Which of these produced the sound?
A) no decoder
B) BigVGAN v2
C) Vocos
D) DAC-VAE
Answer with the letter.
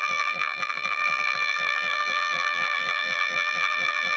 B